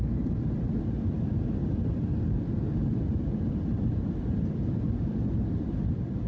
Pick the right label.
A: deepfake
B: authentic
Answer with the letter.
B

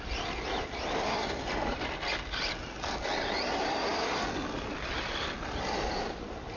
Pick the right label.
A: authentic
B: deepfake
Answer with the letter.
A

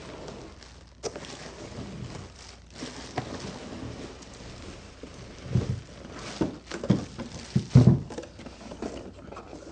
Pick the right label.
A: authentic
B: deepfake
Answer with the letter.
A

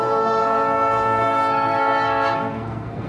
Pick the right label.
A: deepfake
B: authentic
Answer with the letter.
A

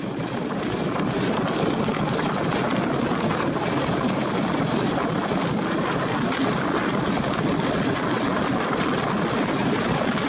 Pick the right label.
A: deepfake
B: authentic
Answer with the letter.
B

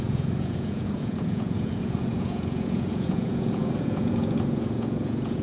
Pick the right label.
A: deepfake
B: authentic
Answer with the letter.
A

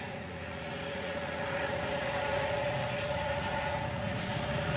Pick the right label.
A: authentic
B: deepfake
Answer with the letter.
B